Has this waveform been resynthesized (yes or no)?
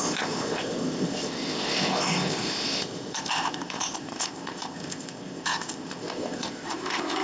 yes